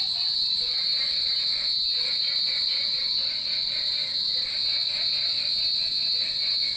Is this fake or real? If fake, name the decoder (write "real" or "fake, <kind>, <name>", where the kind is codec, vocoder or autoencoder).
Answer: real